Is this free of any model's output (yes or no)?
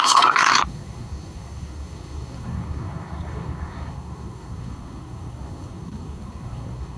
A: no